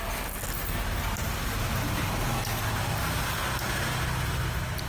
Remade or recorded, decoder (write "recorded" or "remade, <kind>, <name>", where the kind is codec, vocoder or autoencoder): recorded